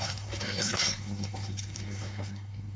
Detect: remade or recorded remade